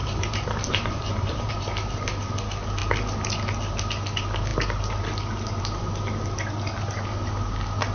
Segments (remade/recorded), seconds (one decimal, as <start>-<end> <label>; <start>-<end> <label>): 0.0-1.5 remade; 1.5-7.9 recorded